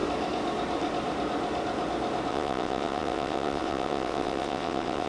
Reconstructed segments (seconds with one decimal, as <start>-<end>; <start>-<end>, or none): 2.3-5.1